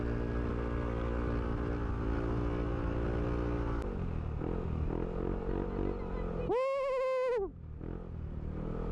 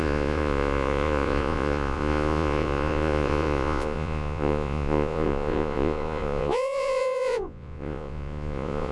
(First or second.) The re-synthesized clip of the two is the second